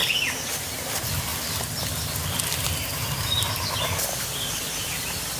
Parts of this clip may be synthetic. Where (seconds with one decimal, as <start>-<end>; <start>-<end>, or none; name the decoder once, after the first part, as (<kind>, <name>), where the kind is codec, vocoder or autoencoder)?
0.0-1.3 (vocoder, BigVGAN v2); 4.2-5.4